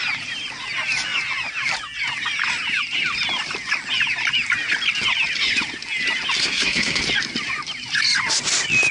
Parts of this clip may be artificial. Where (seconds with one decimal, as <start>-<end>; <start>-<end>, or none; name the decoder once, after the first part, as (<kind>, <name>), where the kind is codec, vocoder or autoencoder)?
6.4-7.0 (codec, SNAC)